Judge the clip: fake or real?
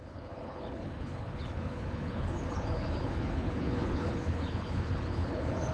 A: fake